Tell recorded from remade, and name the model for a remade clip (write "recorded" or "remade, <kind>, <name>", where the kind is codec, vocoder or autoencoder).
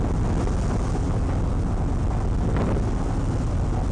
recorded